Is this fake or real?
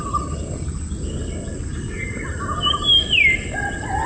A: real